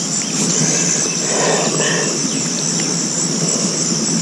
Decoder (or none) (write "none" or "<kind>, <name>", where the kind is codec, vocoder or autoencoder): none